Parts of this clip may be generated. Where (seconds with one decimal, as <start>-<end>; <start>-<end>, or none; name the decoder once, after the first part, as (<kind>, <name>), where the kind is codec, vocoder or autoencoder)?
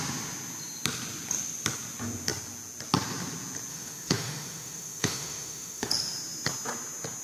3.7-5.9 (autoencoder, DAC-VAE)